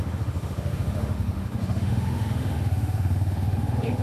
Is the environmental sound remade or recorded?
remade